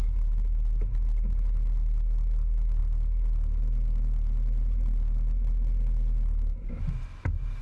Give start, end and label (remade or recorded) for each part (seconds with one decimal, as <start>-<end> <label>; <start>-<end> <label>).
0.0-7.6 recorded